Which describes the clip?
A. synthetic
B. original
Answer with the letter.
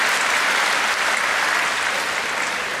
B